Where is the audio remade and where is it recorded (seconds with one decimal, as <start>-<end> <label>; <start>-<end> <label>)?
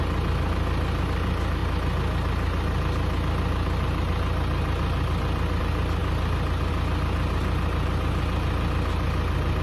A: 0.0-9.6 recorded